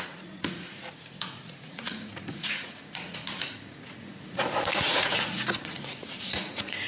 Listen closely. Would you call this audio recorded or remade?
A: remade